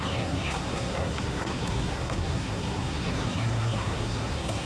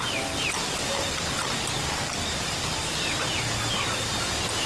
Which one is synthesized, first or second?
first